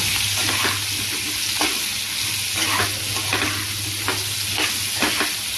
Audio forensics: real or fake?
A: real